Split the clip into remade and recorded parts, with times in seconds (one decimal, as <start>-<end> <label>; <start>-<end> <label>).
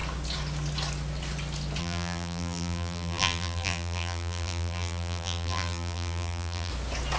0.0-1.8 recorded; 1.8-6.7 remade; 6.7-7.2 recorded